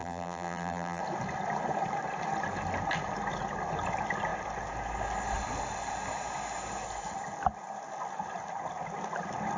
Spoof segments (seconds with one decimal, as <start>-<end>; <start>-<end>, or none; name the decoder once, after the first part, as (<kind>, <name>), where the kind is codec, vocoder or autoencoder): 0.0-1.0 (vocoder, BigVGAN v2)